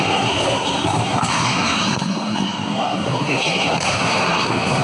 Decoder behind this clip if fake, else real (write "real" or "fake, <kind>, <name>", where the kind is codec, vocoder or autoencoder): fake, codec, SNAC